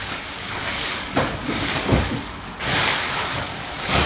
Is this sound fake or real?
fake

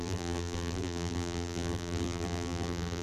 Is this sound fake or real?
fake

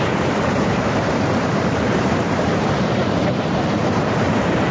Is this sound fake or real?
fake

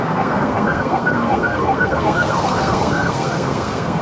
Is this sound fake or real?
fake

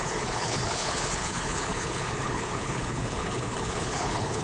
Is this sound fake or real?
fake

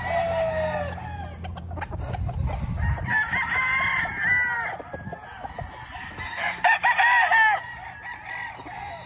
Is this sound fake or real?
real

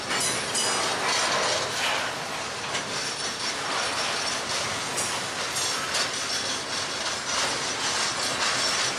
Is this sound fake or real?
real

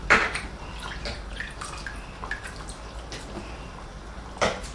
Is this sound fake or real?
real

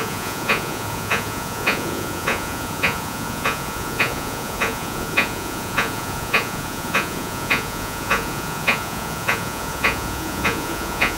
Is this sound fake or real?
fake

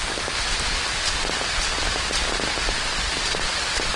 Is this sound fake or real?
real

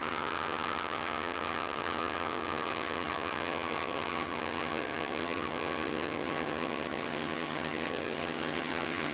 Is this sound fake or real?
fake